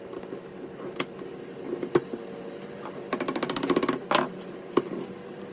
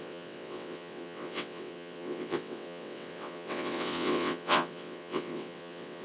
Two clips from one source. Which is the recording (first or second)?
first